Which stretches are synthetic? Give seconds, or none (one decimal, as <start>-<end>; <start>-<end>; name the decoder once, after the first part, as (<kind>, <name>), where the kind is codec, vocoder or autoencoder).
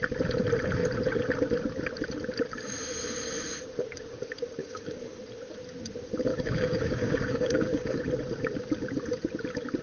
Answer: 4.6-5.2 (codec, DAC); 6.3-8.0